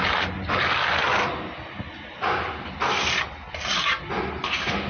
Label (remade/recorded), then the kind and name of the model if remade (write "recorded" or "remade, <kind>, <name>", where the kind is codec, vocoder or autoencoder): recorded